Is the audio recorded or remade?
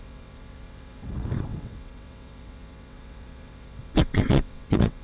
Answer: remade